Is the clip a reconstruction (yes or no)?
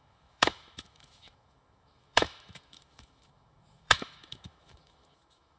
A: yes